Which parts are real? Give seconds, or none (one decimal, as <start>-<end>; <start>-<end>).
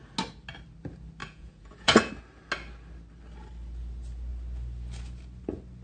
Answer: 0.0-1.2; 2.1-5.8